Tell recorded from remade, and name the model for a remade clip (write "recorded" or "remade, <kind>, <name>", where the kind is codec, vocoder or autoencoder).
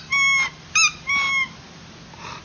recorded